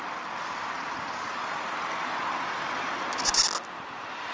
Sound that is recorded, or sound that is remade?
recorded